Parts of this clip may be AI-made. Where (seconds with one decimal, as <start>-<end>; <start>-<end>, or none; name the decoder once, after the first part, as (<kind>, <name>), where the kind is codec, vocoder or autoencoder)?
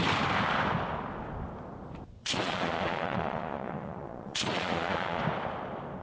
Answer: 2.2-5.2 (vocoder, Vocos)